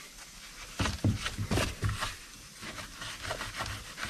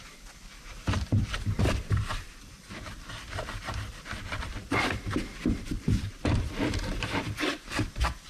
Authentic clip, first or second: first